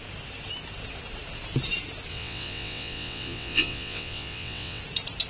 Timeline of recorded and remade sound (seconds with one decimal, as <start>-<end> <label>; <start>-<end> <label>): 0.0-2.1 recorded; 2.1-4.8 remade; 4.8-5.3 recorded

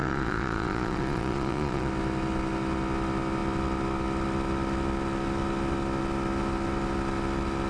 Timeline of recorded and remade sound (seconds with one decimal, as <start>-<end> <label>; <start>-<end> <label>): 0.0-1.9 remade; 1.9-7.7 recorded

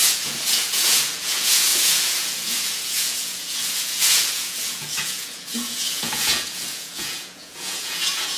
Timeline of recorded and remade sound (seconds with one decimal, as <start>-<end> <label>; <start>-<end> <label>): 0.0-8.4 remade

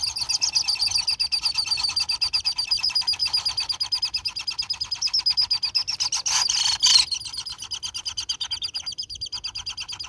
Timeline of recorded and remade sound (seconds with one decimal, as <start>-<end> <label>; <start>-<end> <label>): 0.0-10.1 recorded

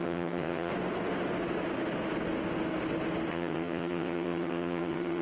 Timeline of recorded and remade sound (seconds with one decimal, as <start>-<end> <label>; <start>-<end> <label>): 0.0-0.7 remade; 0.7-3.3 recorded; 3.3-5.2 remade

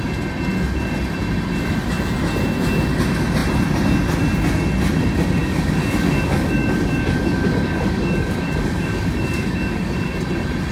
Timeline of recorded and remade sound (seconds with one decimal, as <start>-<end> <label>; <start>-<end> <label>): 0.0-5.4 recorded; 5.4-10.2 remade; 10.2-10.7 recorded